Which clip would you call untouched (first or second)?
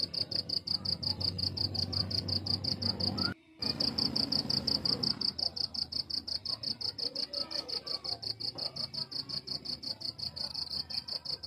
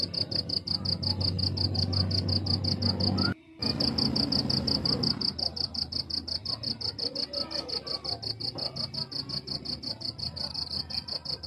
second